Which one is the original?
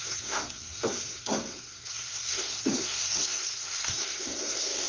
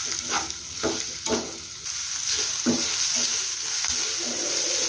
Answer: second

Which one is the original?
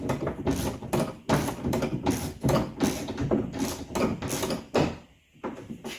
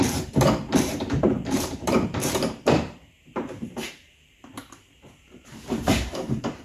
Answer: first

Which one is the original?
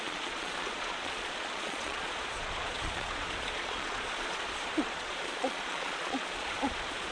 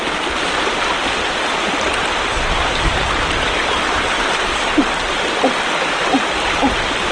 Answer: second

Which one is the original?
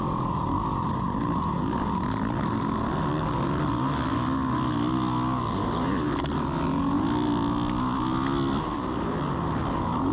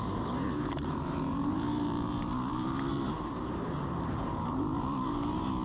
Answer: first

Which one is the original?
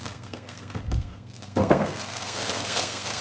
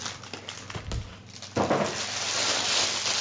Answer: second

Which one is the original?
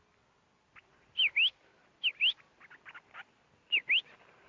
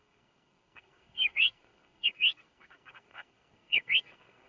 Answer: first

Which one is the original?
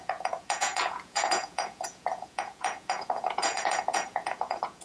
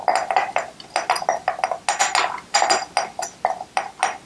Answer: second